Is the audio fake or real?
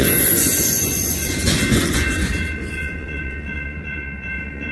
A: fake